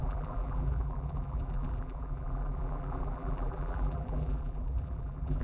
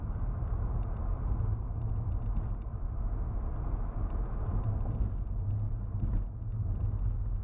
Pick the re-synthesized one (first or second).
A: first